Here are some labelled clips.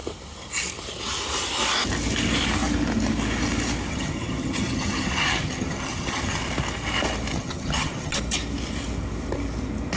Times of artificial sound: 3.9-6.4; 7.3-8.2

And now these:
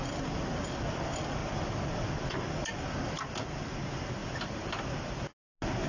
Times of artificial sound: none

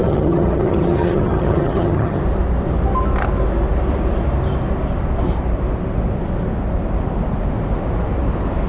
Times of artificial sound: 0.0-2.2

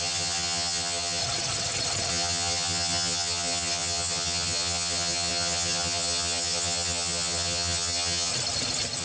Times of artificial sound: 0.0-1.2; 2.1-8.3

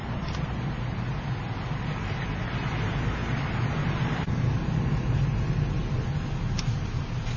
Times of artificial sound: none

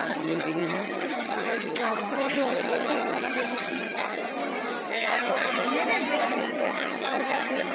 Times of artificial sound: 0.0-4.2; 4.9-5.7; 6.3-7.7